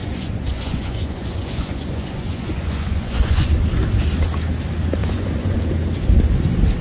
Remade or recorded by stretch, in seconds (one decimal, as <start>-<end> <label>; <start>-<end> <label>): 0.0-3.5 remade; 3.5-5.0 recorded; 5.0-5.6 remade; 5.6-6.8 recorded